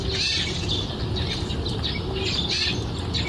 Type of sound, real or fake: real